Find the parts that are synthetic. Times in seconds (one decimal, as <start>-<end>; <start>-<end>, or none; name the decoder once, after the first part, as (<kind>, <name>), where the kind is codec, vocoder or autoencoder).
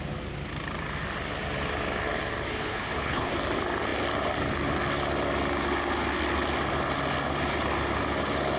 2.6-3.3 (codec, HILCodec)